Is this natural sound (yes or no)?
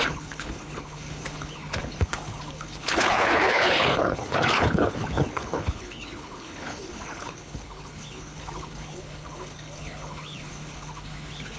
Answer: no